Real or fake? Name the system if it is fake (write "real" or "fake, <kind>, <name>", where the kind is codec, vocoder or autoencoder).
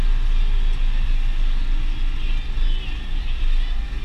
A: real